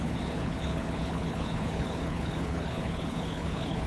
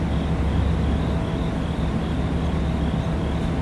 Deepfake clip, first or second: first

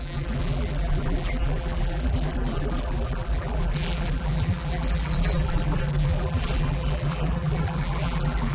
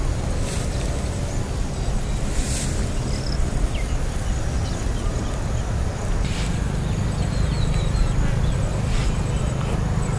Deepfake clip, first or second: first